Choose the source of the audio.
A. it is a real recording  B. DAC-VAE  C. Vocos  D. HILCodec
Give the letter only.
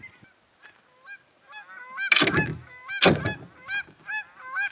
A